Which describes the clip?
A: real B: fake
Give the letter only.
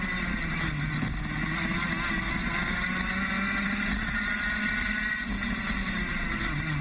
A